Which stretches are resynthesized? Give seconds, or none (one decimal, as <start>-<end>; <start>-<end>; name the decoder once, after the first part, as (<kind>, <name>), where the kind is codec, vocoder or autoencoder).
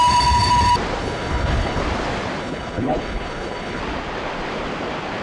1.0-1.8 (codec, HILCodec); 2.4-3.8